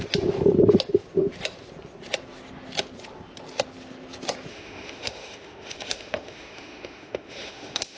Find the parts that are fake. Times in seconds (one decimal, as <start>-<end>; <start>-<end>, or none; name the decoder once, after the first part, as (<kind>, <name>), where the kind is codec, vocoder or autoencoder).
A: 4.5-8.0 (autoencoder, DAC-VAE)